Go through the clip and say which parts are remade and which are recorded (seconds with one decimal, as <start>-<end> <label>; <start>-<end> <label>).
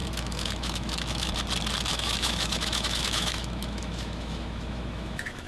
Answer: 0.0-1.3 remade; 1.3-1.9 recorded; 1.9-5.5 remade